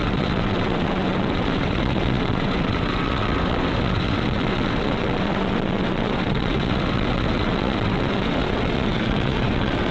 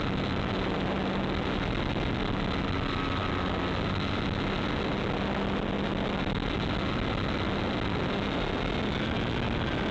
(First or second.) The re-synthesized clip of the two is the first